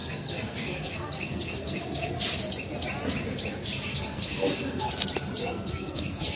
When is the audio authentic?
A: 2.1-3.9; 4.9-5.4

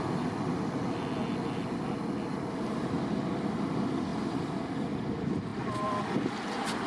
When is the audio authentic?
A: 0.0-6.9

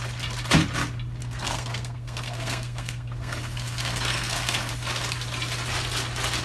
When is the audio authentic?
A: 0.0-1.2; 4.7-6.4

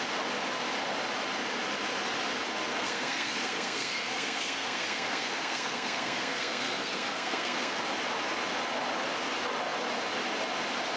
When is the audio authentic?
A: 0.0-2.7; 7.8-11.0

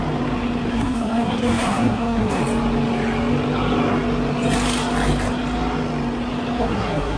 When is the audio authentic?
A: 0.0-0.7; 2.4-6.6

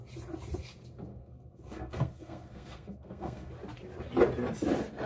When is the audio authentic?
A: 0.0-1.1; 3.5-5.1

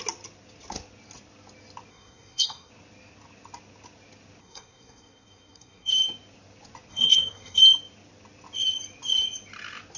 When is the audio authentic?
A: 0.0-1.9; 2.7-4.4; 5.9-6.9; 7.6-10.0